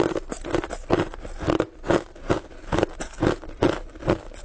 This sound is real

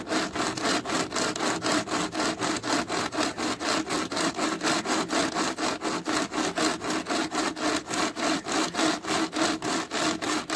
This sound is real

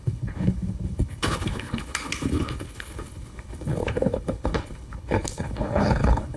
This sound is fake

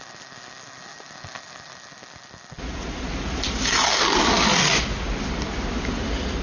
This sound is real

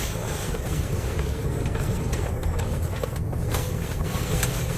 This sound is fake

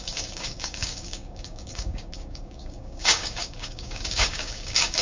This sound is fake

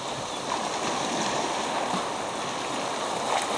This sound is real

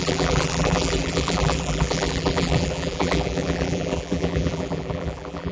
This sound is fake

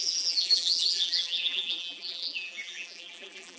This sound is fake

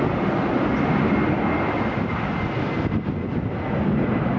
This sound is real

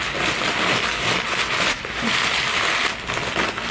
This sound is real